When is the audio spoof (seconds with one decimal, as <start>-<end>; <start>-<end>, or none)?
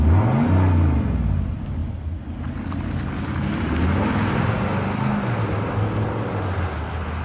none